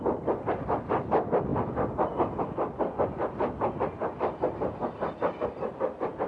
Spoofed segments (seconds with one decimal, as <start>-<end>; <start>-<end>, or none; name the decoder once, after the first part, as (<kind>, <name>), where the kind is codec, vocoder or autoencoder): none